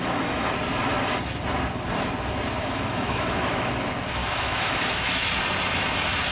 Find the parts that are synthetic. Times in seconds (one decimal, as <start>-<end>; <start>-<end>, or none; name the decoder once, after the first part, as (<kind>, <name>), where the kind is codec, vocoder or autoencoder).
0.0-0.5 (autoencoder, DAC-VAE); 2.6-3.7; 4.2-5.3